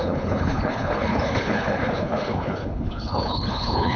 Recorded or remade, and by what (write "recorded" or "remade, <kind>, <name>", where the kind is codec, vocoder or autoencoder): remade, codec, HILCodec